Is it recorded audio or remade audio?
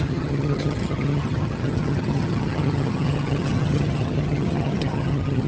remade